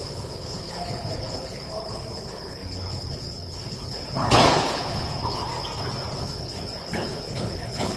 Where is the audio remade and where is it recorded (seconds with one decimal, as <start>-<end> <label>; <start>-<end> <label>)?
0.0-5.5 remade; 5.5-6.2 recorded; 6.2-8.0 remade